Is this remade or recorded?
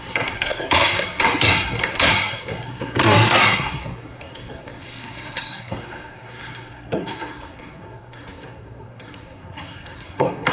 remade